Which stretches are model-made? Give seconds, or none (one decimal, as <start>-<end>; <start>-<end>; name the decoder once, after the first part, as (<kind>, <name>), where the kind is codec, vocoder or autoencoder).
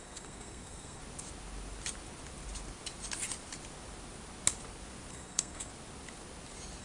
0.0-1.0 (codec, SNAC); 5.1-5.7